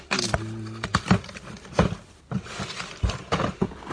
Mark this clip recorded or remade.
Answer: recorded